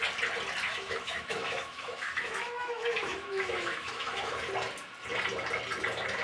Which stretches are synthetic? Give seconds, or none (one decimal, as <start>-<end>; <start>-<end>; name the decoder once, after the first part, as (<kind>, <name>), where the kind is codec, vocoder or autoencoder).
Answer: 0.7-4.4 (autoencoder, DAC-VAE)